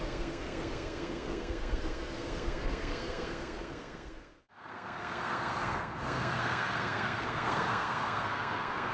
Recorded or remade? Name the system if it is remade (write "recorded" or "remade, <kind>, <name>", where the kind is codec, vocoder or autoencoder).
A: remade, codec, SNAC